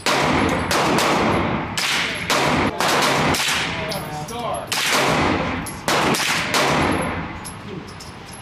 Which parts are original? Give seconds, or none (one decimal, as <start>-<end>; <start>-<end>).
0.0-5.1; 5.6-8.4